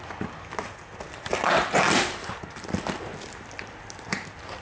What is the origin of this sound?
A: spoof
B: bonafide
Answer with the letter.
A